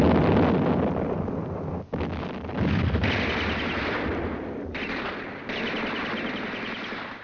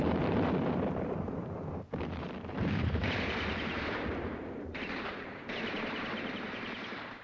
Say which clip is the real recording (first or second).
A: first